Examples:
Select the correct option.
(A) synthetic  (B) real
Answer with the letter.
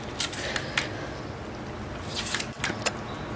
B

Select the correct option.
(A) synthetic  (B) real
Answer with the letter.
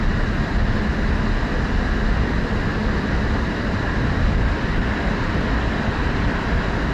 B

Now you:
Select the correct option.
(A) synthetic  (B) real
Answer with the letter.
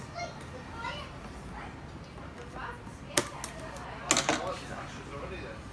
B